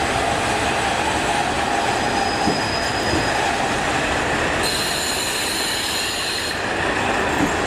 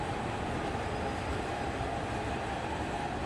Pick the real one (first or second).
first